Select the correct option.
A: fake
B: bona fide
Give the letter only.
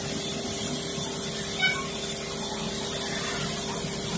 B